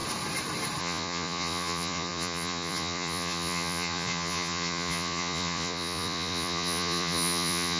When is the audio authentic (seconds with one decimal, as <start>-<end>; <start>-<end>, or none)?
0.0-0.8